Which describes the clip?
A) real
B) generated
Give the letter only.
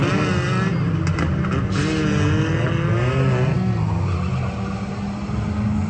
A